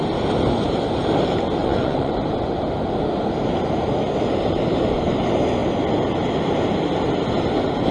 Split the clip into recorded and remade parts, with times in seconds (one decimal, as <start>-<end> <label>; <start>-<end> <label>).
0.0-1.6 recorded; 1.6-2.2 remade; 2.2-7.9 recorded